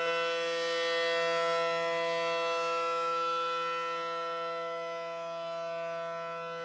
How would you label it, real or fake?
real